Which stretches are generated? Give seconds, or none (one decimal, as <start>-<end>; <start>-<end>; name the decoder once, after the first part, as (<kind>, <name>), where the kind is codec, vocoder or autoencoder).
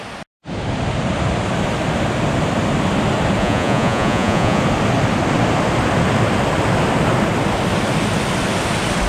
3.4-4.6 (vocoder, Vocos)